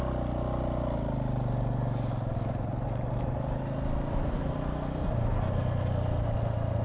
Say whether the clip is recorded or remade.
recorded